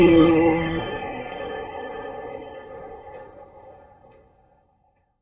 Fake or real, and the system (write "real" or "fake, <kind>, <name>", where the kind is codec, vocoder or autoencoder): fake, codec, SNAC